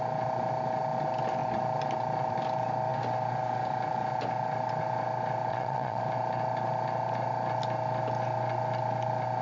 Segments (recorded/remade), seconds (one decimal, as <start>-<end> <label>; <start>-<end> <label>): 0.0-5.5 recorded; 5.5-6.0 remade; 6.0-9.4 recorded